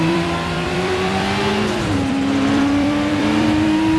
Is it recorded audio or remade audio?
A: remade